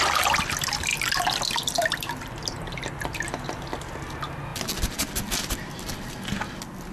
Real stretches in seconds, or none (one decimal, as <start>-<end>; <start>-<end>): 0.0-6.9